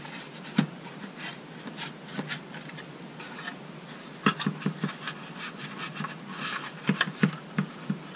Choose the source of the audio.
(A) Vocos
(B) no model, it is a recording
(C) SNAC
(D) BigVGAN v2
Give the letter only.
B